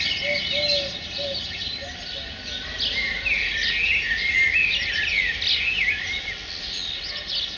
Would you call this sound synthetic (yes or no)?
no